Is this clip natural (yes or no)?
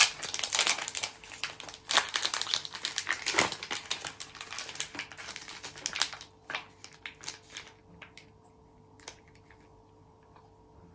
yes